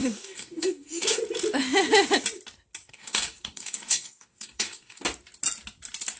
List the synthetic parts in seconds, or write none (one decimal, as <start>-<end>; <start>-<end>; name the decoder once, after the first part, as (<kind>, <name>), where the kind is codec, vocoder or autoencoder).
0.0-1.2 (codec, DAC); 2.8-5.0